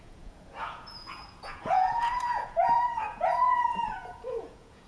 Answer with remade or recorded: remade